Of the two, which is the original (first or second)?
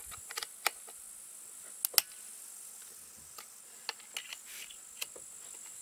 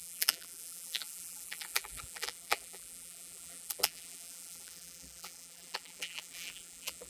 first